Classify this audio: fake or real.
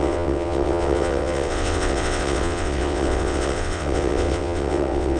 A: fake